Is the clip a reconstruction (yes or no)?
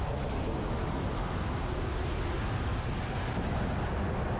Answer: no